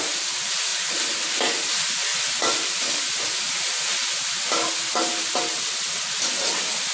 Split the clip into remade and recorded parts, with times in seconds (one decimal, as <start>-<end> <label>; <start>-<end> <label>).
0.0-0.7 recorded; 0.7-1.2 remade; 1.2-6.9 recorded